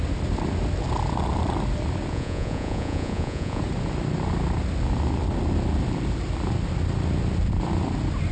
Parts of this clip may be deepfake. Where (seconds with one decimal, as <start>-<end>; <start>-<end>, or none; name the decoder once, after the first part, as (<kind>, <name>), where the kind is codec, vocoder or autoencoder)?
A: 2.1-3.6 (vocoder, Vocos)

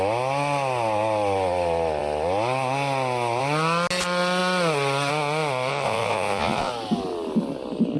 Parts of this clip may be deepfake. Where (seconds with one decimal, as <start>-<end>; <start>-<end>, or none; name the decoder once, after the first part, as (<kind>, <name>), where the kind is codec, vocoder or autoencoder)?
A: 5.7-6.7 (vocoder, Vocos)

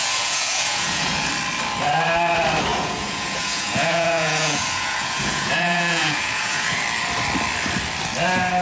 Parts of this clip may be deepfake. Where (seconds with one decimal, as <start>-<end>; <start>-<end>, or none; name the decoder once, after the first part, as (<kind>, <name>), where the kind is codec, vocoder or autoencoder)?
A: 0.0-1.3 (vocoder, Vocos); 2.7-6.8

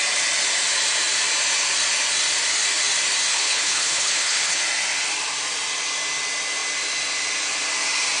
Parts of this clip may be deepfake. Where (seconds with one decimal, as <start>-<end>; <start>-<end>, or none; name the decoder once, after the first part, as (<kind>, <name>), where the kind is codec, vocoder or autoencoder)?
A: 3.3-4.6 (codec, HILCodec)

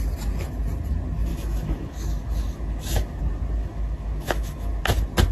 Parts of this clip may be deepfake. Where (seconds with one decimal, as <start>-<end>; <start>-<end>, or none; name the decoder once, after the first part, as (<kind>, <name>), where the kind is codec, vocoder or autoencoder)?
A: 1.3-3.2 (autoencoder, DAC-VAE); 3.6-4.8

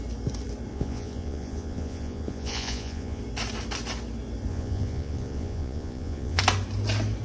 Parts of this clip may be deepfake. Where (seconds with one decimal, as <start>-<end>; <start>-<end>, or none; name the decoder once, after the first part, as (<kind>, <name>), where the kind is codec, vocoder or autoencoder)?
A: 0.7-3.2 (vocoder, Vocos); 4.5-6.4